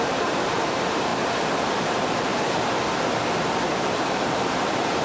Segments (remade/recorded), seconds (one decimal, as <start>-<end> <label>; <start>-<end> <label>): 0.0-1.1 remade; 1.1-1.8 recorded; 1.8-2.3 remade; 2.3-3.8 recorded; 3.8-5.0 remade